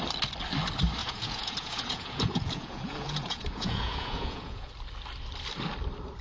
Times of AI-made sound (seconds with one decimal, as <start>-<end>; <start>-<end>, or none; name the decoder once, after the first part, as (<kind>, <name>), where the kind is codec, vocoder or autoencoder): 1.0-4.7 (vocoder, Vocos)